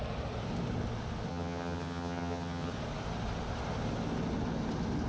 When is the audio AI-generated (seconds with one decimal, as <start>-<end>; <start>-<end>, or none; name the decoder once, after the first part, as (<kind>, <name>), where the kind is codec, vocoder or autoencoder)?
1.3-2.7 (vocoder, HiFi-GAN)